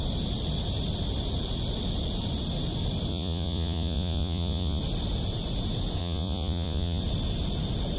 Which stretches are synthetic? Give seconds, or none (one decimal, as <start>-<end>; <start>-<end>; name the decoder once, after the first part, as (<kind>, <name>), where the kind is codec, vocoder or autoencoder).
3.1-4.8 (vocoder, Vocos); 6.0-7.0